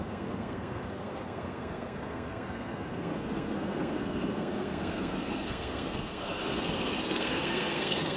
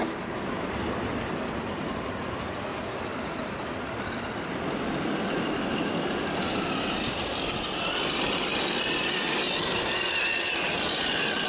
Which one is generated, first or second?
first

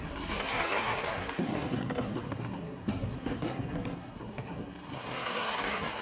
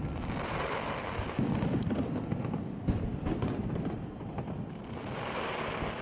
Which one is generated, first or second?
first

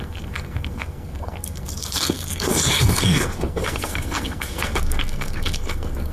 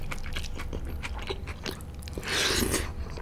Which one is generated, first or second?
first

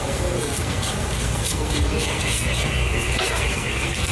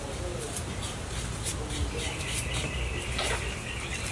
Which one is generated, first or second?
first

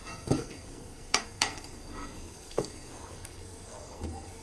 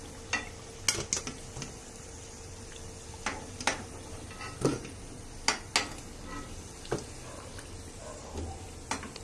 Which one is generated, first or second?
first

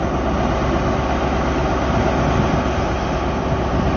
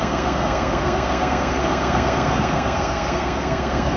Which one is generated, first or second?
second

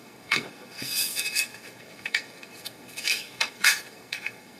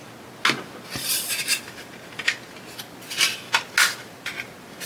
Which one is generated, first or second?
first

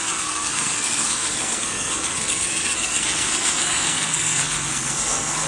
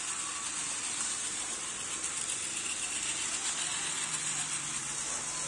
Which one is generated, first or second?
first